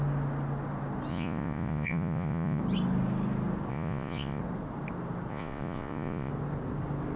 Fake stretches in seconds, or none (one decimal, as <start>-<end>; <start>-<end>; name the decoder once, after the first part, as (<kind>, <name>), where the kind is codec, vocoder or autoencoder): 1.1-2.6 (vocoder, Vocos); 3.7-4.4; 5.3-6.3